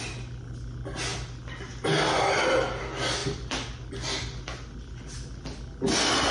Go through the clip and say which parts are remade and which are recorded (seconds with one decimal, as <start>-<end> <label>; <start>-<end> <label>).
0.0-3.2 recorded; 3.2-4.4 remade; 4.4-6.3 recorded